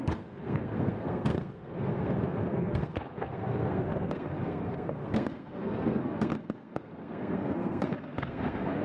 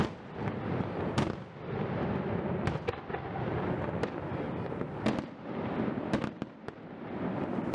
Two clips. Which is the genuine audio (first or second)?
second